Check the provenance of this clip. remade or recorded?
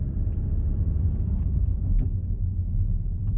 recorded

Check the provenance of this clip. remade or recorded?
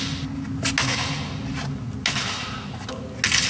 recorded